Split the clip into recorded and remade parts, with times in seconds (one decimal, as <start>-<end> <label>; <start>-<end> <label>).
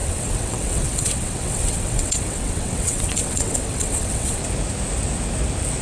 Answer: 0.0-4.4 remade; 4.4-5.8 recorded